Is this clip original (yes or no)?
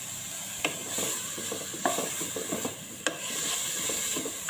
yes